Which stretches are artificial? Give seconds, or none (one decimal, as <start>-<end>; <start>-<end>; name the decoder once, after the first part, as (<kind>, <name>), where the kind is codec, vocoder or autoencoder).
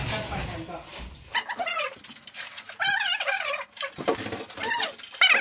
0.9-4.1 (vocoder, BigVGAN v2)